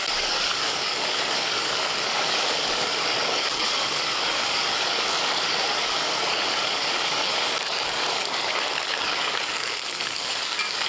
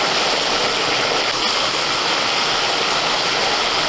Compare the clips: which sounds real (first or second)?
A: second